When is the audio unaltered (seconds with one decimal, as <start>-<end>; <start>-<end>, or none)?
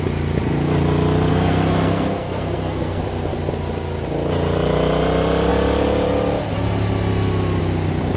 0.0-1.3; 3.0-8.2